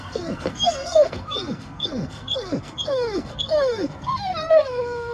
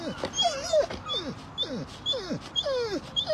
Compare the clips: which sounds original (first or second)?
second